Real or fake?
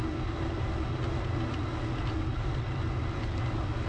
real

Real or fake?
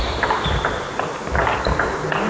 fake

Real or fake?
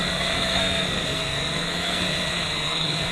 fake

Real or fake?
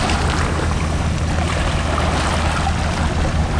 real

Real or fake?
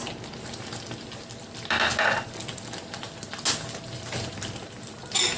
real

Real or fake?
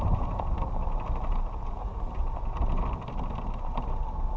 real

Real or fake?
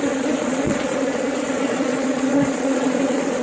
fake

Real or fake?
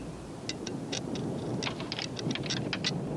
real